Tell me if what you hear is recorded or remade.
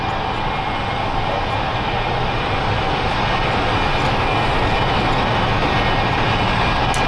recorded